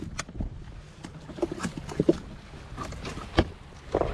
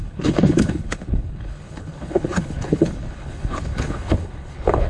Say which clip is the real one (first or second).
first